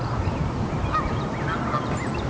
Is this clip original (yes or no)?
yes